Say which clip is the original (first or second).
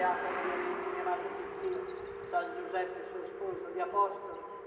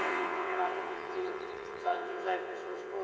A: first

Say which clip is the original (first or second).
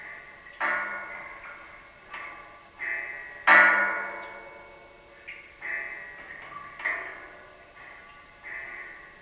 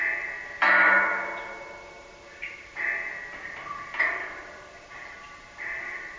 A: first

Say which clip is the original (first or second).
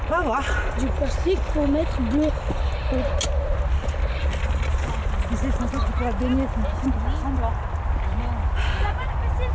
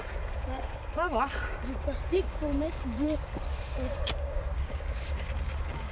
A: first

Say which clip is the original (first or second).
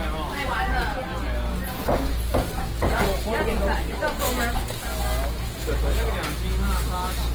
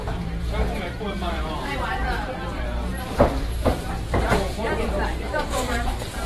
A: first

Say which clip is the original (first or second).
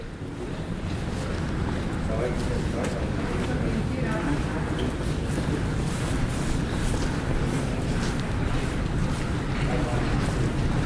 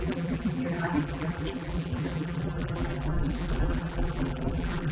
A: first